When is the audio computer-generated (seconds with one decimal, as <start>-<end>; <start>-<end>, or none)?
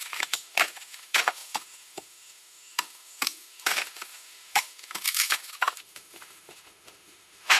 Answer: 0.0-7.6